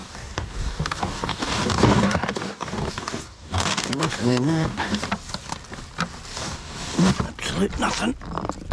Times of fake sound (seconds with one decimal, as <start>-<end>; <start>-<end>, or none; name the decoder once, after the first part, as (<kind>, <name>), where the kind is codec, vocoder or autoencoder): 0.0-5.0 (codec, DAC); 6.3-7.1